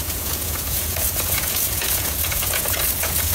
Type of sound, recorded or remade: remade